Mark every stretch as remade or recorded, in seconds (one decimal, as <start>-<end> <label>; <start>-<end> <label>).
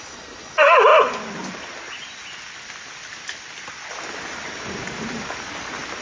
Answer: 0.0-6.0 recorded